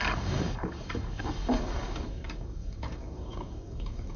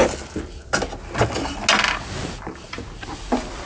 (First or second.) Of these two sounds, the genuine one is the second